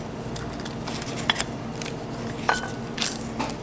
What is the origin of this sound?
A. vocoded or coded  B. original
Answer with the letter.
B